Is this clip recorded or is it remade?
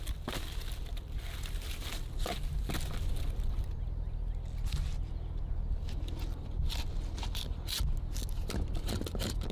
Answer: recorded